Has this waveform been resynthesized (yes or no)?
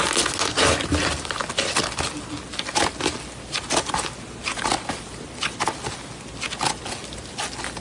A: no